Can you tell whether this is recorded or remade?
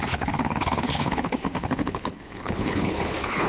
remade